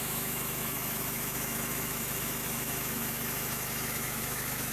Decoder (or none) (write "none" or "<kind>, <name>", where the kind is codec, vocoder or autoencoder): autoencoder, DAC-VAE